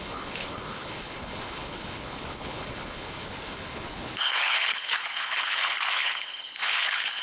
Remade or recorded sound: remade